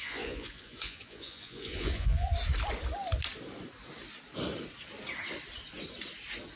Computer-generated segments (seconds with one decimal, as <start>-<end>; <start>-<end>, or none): 0.0-2.3